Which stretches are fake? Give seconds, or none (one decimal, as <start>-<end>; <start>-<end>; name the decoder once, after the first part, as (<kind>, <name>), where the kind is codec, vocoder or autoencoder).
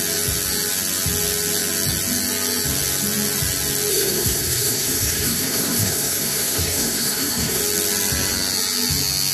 3.9-7.6 (codec, SNAC)